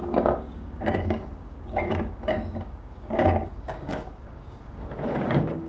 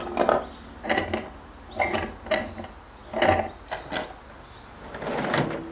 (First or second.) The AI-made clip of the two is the first